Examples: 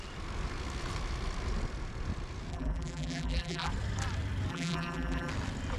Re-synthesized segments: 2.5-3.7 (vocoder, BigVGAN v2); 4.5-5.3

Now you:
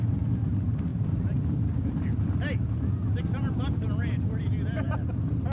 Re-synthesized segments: none